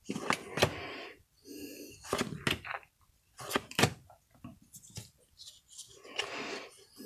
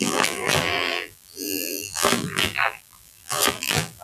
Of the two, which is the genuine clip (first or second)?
first